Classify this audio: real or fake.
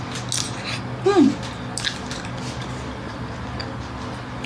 real